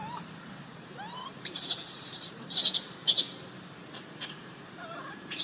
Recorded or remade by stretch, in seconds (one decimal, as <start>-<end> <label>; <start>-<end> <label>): 0.0-3.2 remade; 3.2-5.4 recorded